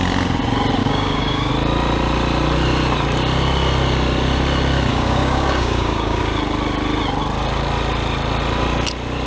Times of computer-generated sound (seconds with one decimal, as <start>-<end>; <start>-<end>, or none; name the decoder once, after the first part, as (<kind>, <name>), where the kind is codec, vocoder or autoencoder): 0.8-1.5 (codec, DAC); 4.9-6.2